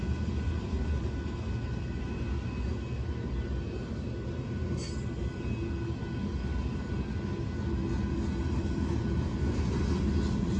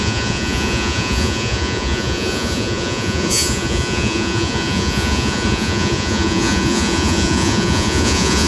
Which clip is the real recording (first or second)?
first